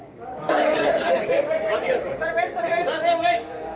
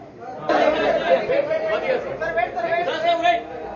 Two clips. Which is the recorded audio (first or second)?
second